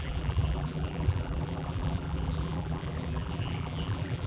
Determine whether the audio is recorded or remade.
remade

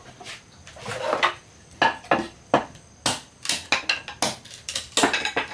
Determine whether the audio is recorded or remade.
recorded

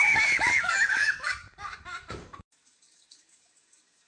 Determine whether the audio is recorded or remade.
remade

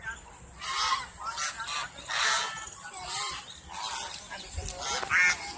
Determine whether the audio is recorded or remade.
recorded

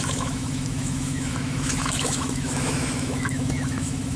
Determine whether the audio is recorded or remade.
remade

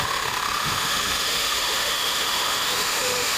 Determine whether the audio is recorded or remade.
remade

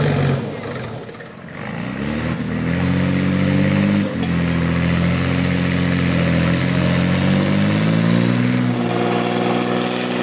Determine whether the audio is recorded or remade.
recorded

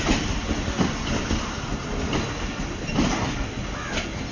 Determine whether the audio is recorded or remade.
recorded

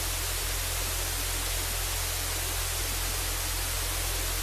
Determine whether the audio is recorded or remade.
recorded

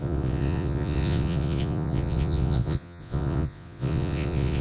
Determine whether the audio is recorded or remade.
remade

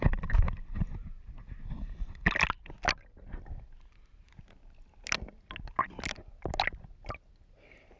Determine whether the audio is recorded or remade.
recorded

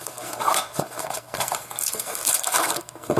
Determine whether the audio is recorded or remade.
remade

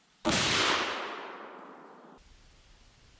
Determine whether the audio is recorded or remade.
recorded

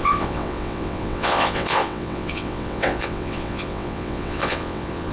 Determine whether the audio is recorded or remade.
remade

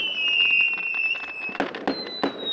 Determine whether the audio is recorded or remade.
recorded